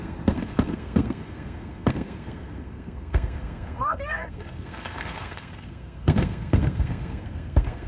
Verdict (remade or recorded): remade